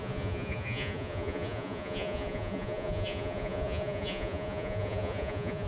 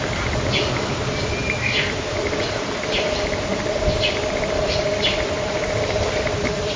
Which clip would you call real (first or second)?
second